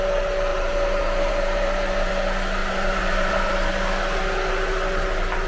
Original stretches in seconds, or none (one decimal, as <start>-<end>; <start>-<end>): 0.0-0.5; 2.1-2.6; 3.5-5.5